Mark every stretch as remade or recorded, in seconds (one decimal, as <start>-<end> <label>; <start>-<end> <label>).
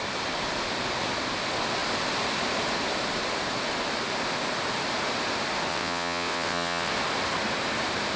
0.0-5.7 recorded; 5.7-6.9 remade; 6.9-8.2 recorded